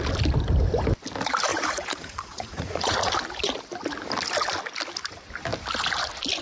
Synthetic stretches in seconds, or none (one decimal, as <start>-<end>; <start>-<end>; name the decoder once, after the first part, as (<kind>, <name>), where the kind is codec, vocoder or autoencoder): 1.5-3.1 (vocoder, Vocos)